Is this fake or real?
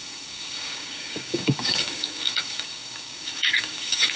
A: fake